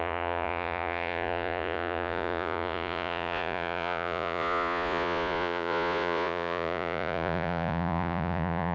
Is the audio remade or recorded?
remade